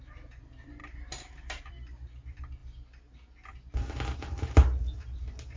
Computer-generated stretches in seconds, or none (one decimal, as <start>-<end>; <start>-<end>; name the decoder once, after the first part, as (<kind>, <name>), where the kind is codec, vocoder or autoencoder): 0.0-0.8 (vocoder, BigVGAN v2); 1.6-2.6